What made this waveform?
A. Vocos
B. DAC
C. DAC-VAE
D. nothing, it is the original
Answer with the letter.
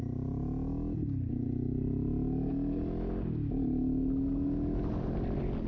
D